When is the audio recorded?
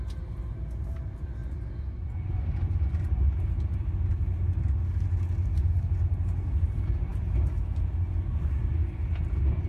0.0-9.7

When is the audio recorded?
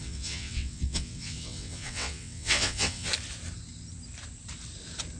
3.1-5.2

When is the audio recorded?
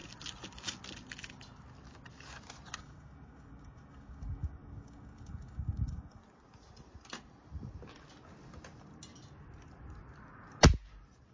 0.0-2.8; 6.2-11.3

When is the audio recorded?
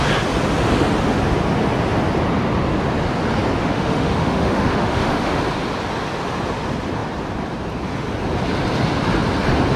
0.0-3.6; 5.4-9.8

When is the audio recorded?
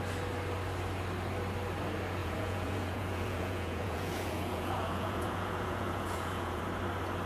0.0-2.2; 6.6-7.3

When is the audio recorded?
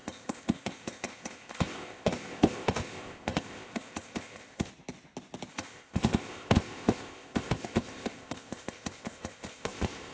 4.7-5.5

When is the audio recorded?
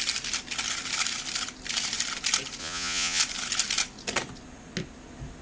0.0-2.6; 3.2-5.4